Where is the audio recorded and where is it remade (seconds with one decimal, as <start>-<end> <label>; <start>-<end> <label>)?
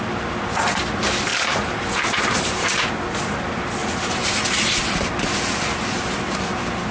0.0-1.3 recorded; 1.3-2.9 remade; 2.9-3.8 recorded; 3.8-5.1 remade; 5.1-6.9 recorded